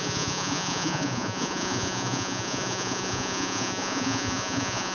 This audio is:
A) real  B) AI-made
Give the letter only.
B